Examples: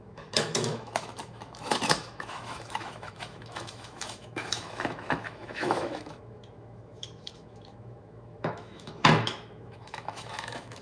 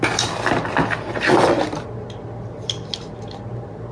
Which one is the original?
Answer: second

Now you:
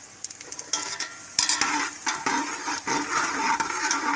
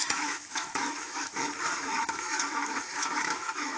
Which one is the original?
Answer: first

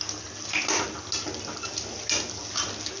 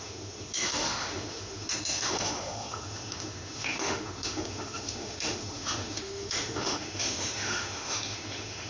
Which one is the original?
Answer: first